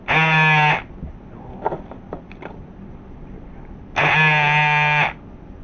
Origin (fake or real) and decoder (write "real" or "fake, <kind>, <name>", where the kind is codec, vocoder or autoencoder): real